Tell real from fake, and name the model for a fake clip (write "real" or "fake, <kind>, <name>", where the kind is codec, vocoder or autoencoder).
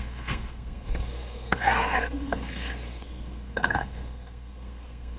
fake, codec, SNAC